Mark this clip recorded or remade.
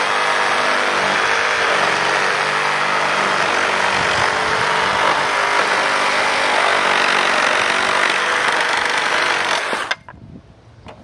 recorded